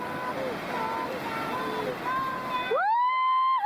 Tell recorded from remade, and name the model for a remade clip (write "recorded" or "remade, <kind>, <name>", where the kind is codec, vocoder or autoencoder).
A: recorded